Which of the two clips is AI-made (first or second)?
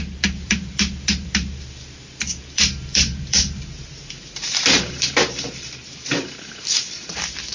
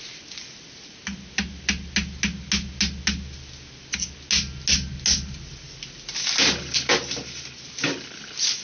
first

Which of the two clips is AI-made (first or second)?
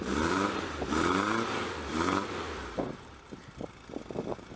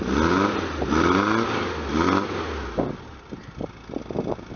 first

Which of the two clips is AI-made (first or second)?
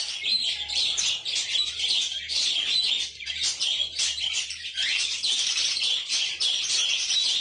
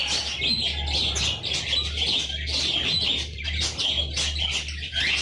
first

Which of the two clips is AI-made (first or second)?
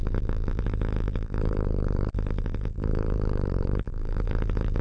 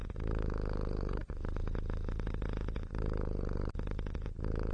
first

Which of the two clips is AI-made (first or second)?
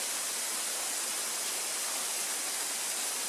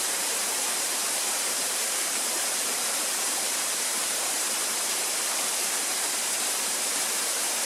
second